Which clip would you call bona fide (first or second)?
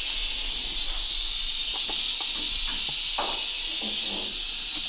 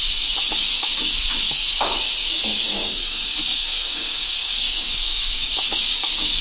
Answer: first